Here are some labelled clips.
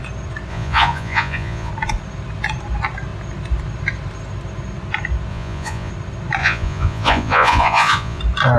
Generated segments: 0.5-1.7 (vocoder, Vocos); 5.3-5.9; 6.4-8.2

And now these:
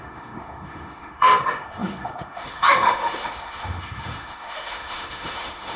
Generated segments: 0.0-5.8 (autoencoder, DAC-VAE)

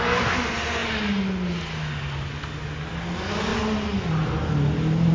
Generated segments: none

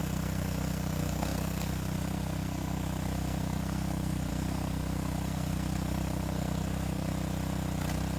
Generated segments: 0.0-7.1 (codec, SNAC)

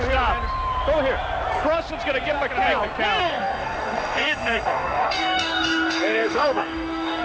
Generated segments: 3.2-7.2 (codec, DAC)

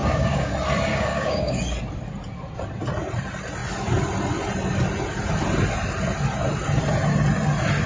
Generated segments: 0.0-0.5 (codec, DAC); 0.9-1.6

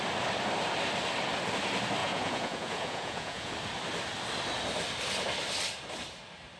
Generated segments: 2.0-3.5 (vocoder, Vocos)

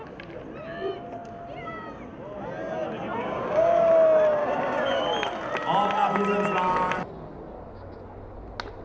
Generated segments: 3.2-3.9 (codec, DAC); 4.4-5.0